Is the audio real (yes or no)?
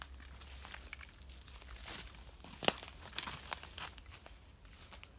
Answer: yes